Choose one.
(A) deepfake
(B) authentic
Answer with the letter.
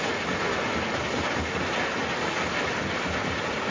B